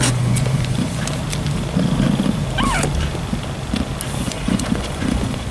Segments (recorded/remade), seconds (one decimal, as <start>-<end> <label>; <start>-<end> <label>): 0.0-1.0 remade; 1.0-4.2 recorded; 4.2-5.5 remade